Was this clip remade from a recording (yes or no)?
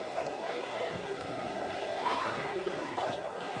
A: yes